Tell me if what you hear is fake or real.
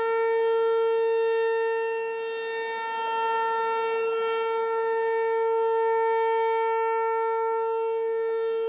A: real